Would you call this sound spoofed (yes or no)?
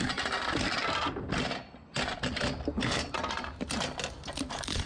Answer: no